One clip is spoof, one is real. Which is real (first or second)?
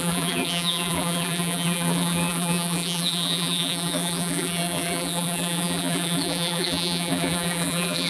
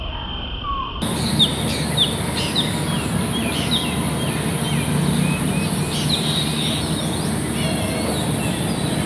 second